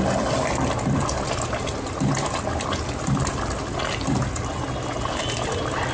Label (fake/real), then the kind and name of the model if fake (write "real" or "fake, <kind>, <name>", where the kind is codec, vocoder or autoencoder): real